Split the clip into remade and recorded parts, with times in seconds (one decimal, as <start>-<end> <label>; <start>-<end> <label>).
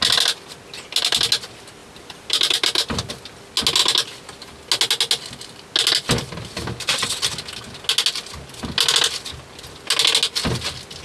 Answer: 0.0-1.8 recorded; 1.8-3.1 remade; 3.1-11.0 recorded